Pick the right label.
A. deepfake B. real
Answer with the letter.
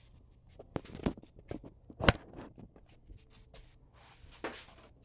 B